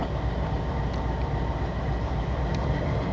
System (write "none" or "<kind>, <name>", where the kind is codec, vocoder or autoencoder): none